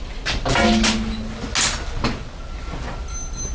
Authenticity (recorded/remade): recorded